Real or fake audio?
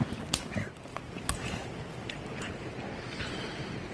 real